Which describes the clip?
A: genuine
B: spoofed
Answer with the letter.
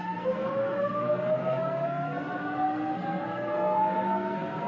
B